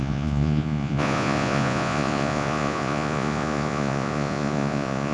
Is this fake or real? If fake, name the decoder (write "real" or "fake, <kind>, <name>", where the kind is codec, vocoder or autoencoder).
fake, vocoder, Vocos